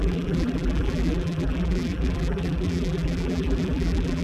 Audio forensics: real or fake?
fake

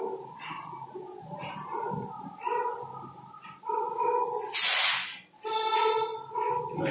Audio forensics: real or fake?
real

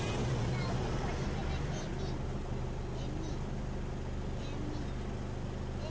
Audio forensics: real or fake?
real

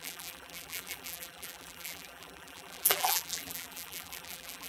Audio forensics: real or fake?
fake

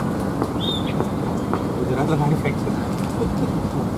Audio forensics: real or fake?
real